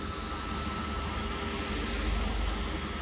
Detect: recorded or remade recorded